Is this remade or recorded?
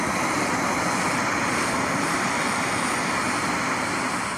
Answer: recorded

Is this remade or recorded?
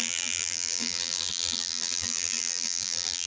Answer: remade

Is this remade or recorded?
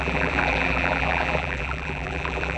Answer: remade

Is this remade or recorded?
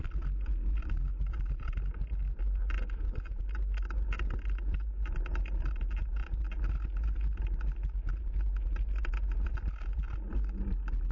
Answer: recorded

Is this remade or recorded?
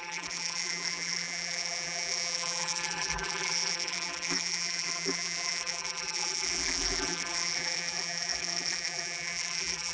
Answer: remade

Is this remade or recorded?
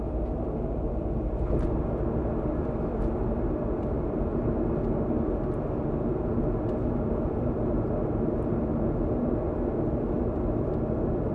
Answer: recorded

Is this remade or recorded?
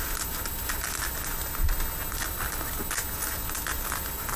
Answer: recorded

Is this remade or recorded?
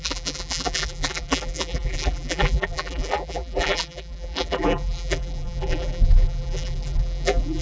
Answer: remade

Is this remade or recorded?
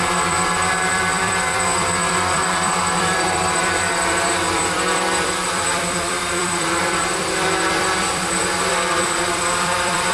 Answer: remade